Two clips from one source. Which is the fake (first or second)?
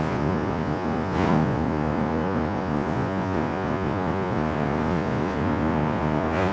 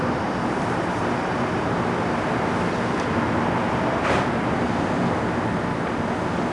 first